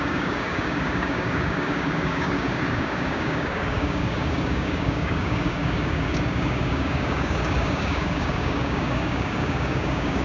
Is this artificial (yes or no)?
yes